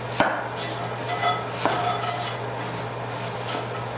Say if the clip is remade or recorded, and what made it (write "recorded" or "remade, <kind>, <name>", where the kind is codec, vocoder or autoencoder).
recorded